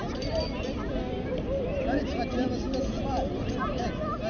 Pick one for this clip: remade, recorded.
remade